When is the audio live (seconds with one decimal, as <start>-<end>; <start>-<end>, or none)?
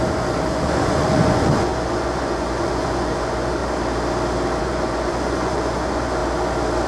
3.6-4.6; 6.2-6.9